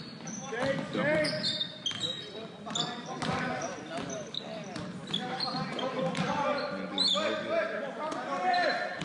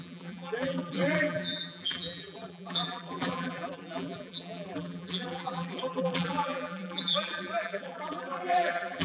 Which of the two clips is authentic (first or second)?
first